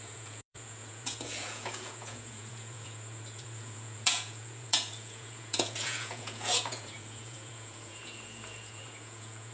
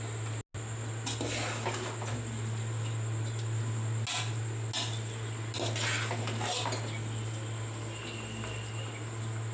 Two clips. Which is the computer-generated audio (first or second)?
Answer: first